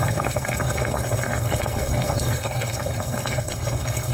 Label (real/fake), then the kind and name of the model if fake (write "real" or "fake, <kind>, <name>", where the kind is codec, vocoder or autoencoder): fake, codec, SNAC